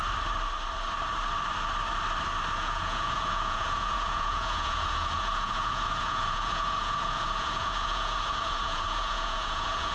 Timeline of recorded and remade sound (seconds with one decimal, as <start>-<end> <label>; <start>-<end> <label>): 0.0-2.5 recorded; 2.5-9.9 remade